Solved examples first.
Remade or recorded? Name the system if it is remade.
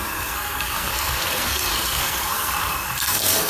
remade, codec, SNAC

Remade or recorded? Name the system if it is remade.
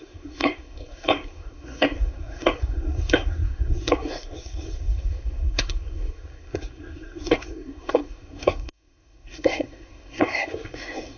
remade, codec, SNAC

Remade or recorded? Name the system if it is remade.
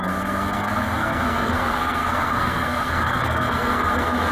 remade, codec, SNAC